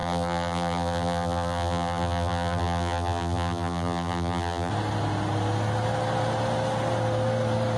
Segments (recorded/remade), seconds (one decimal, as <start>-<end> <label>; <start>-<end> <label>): 0.0-4.7 remade; 4.7-7.8 recorded

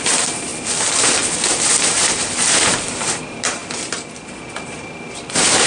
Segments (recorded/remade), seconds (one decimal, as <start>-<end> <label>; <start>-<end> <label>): 0.0-0.5 remade; 0.5-1.8 recorded; 1.8-3.6 remade; 3.6-4.5 recorded; 4.5-5.7 remade

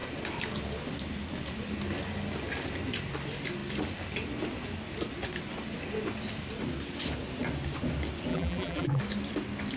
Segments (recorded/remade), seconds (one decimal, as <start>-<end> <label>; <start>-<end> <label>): 0.0-8.3 recorded; 8.3-9.0 remade; 9.0-9.8 recorded